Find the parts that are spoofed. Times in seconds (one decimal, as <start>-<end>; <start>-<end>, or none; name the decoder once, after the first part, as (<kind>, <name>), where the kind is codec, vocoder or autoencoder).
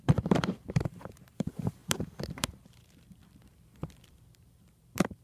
0.0-3.2 (vocoder, BigVGAN v2); 4.1-5.2